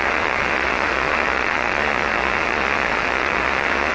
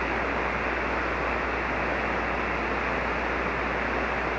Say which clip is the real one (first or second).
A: second